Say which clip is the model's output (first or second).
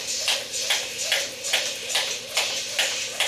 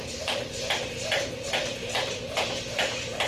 second